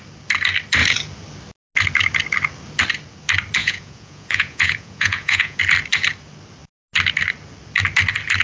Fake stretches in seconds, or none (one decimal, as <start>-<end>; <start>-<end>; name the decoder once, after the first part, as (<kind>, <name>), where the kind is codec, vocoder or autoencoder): 3.6-5.6 (vocoder, Vocos)